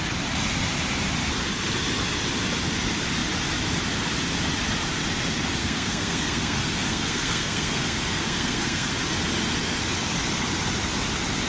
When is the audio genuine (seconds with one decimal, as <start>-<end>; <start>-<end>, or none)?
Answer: 0.0-5.6; 8.9-11.5